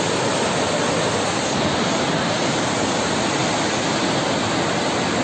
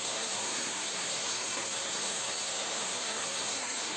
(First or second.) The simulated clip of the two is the second